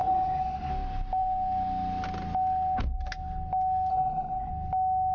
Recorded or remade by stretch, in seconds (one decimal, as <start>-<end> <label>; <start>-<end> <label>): 0.0-0.7 remade; 0.7-3.9 recorded; 3.9-4.5 remade; 4.5-5.1 recorded